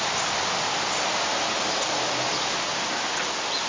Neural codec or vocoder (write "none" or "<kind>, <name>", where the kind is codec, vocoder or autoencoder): none